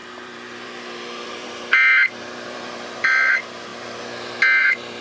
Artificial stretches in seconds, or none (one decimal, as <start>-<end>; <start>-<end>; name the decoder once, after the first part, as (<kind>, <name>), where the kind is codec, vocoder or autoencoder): 0.0-3.7 (vocoder, BigVGAN v2); 4.6-5.0